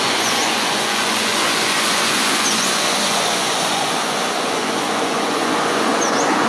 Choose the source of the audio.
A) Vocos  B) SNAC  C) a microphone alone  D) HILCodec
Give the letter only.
A